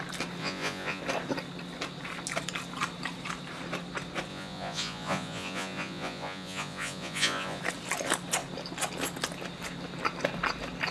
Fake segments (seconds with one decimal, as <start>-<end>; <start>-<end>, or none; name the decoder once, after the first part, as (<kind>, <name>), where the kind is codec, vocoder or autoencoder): 0.4-1.0 (vocoder, Vocos); 4.3-7.6